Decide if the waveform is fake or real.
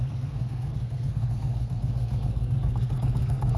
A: fake